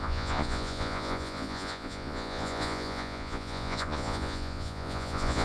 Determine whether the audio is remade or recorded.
remade